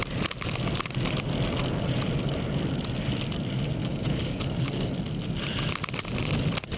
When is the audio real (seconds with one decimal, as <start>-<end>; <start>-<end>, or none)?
0.0-3.8; 4.9-6.8